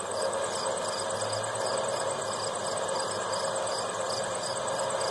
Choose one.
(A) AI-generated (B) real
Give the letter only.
B